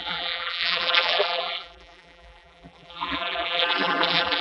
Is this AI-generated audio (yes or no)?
yes